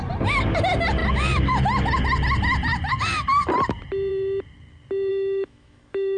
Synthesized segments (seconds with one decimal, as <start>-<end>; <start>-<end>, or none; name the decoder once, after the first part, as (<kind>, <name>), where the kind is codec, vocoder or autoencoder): 5.1-6.2 (autoencoder, DAC-VAE)